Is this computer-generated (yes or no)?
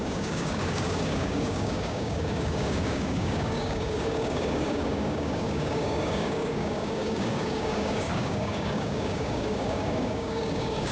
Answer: yes